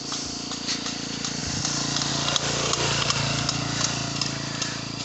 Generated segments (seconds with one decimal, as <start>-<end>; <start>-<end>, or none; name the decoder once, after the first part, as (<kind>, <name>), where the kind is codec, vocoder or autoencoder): 4.0-5.0 (vocoder, BigVGAN v2)